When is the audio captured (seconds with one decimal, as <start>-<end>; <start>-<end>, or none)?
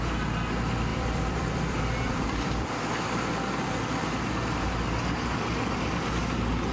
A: 0.0-0.9; 3.1-6.7